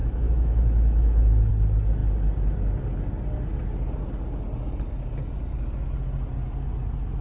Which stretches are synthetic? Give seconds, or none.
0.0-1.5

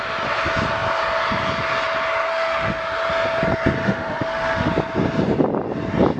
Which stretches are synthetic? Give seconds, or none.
2.3-2.8; 3.8-4.7

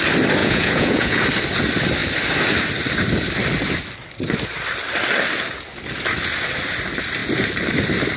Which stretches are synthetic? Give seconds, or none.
0.4-1.2

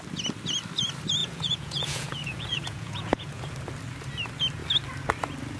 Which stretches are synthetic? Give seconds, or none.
1.2-3.4